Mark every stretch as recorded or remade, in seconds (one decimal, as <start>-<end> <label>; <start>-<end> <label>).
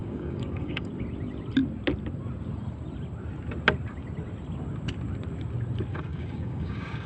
0.0-0.9 remade; 0.9-5.9 recorded; 5.9-7.1 remade